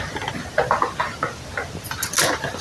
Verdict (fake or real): real